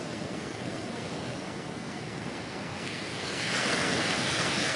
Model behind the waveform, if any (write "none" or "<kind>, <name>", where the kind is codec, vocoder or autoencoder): codec, SNAC